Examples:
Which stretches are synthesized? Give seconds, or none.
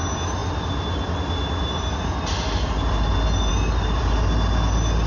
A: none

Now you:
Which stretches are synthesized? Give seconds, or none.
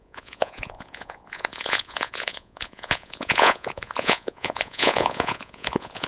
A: 0.0-6.1 (vocoder, Vocos)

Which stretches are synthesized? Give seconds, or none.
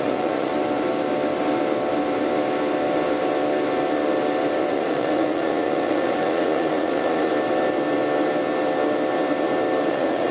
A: 0.0-0.5 (vocoder, Vocos); 4.7-7.3; 9.9-10.3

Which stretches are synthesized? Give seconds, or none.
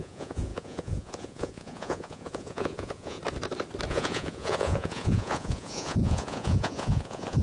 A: 0.0-3.2 (vocoder, Vocos); 3.9-7.4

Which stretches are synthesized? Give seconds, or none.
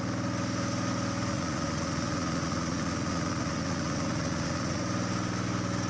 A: 1.3-4.8 (vocoder, Vocos)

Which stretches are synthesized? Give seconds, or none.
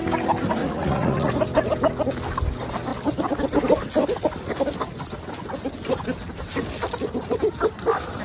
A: 0.6-1.3 (vocoder, Vocos)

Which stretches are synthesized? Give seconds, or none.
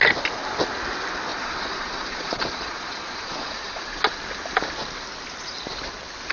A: 1.3-3.8 (vocoder, Vocos)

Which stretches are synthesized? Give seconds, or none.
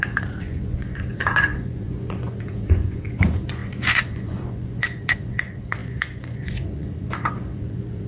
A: 0.0-8.1 (vocoder, Vocos)